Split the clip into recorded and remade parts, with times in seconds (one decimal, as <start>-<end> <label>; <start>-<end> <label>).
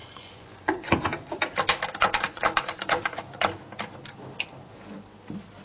0.0-1.3 remade; 1.3-2.0 recorded; 2.0-3.2 remade; 3.2-5.6 recorded